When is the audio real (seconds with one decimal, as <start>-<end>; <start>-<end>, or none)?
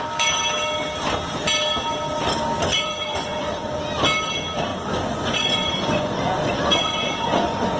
0.0-2.7; 3.8-4.7